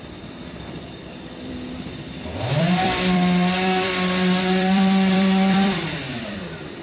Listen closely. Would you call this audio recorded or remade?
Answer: remade